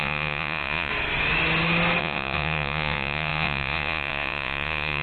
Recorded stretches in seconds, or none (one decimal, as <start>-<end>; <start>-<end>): 0.9-2.0

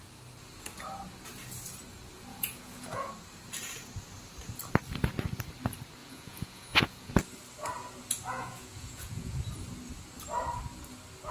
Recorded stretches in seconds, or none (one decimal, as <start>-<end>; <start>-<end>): 0.0-2.3; 3.1-6.0; 7.1-8.3; 9.4-11.3

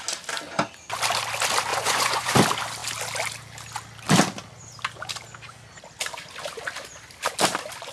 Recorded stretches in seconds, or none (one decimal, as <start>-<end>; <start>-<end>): 0.0-1.7; 2.3-7.9

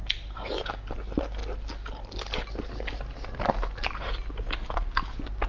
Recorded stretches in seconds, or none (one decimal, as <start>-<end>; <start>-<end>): 0.0-5.5

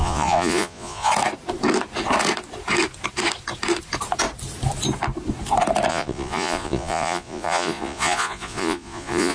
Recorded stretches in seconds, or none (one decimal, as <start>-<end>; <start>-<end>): 1.1-5.9